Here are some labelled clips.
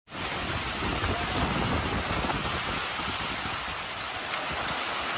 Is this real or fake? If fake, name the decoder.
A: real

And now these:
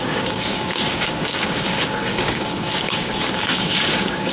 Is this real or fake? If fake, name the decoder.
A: fake, codec, DAC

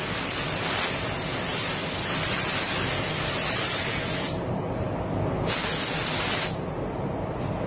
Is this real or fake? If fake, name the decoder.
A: real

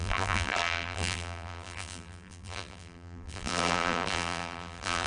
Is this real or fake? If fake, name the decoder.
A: fake, vocoder, BigVGAN v2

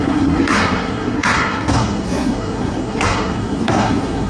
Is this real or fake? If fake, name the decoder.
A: fake, codec, SNAC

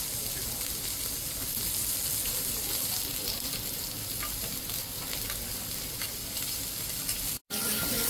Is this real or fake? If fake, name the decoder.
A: real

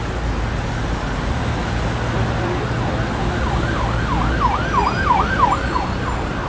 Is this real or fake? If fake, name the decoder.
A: real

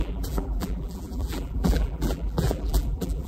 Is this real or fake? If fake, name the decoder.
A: fake, vocoder, BigVGAN v2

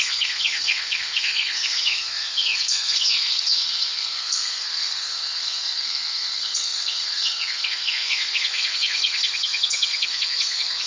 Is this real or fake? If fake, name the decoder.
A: fake, codec, SNAC